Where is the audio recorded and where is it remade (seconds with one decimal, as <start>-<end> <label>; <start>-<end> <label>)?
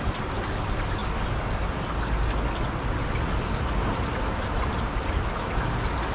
0.0-6.1 recorded